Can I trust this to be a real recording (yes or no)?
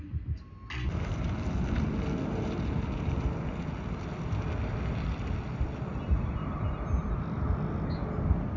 yes